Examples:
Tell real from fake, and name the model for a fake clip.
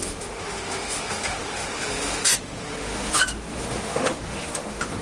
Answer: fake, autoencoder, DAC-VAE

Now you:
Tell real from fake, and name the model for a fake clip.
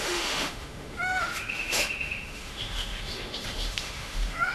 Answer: fake, autoencoder, DAC-VAE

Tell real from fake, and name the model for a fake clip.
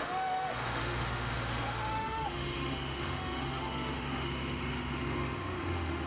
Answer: fake, autoencoder, DAC-VAE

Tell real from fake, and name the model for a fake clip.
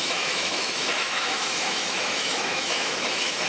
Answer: fake, autoencoder, DAC-VAE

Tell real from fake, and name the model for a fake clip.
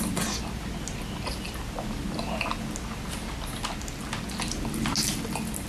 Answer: real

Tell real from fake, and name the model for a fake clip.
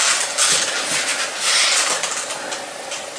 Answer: real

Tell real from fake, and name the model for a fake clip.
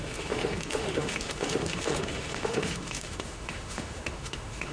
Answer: fake, autoencoder, DAC-VAE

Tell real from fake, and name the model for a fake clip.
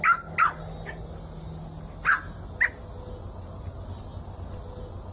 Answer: real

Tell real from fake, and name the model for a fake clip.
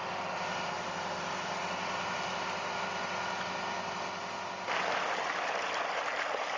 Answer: real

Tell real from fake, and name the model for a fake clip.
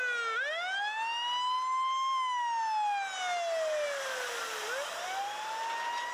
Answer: real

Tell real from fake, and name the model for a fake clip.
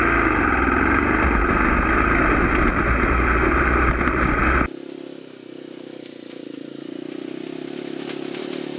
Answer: real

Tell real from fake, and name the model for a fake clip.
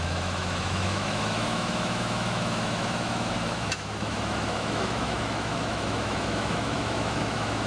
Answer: fake, autoencoder, DAC-VAE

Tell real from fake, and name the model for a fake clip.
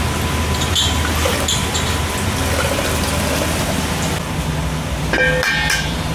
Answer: real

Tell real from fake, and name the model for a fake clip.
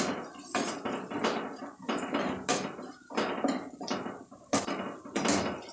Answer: real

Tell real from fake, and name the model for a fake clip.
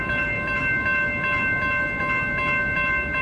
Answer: real